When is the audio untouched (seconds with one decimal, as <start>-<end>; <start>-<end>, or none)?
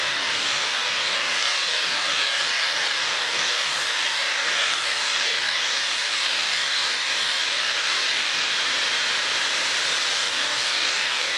8.5-10.1